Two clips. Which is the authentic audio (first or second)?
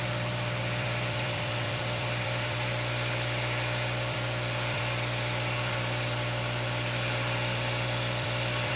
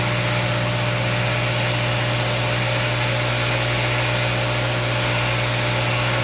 second